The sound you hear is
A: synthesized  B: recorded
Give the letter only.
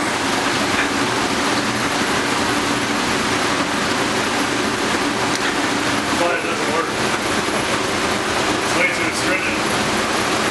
B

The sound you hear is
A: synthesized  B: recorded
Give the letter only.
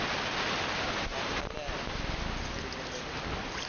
B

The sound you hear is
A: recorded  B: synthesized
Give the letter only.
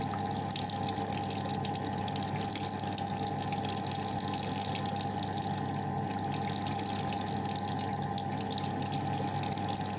A